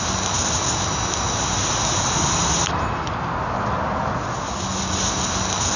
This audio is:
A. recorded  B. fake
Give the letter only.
A